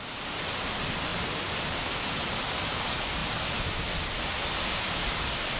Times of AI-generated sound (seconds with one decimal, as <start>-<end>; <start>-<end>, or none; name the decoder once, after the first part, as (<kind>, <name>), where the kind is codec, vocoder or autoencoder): none